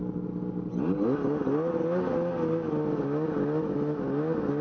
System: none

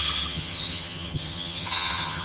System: vocoder, HiFi-GAN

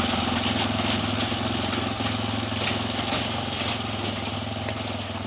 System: none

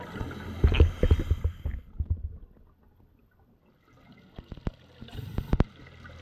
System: none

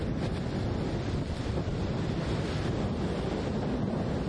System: none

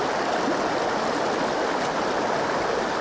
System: none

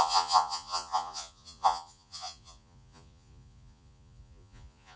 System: vocoder, Vocos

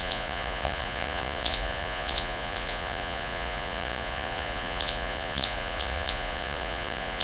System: vocoder, Vocos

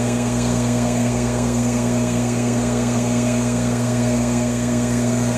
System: codec, SNAC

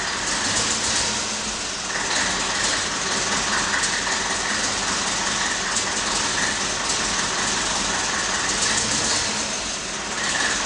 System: none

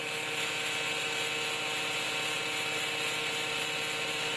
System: none